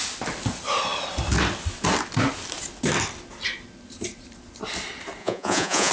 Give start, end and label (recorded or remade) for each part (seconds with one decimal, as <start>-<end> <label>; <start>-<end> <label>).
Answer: 0.0-5.2 recorded; 5.2-5.9 remade